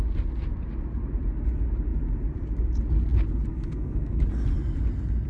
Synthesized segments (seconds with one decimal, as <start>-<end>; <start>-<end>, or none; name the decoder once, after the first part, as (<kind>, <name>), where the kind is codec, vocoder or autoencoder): 3.5-4.2 (codec, SNAC)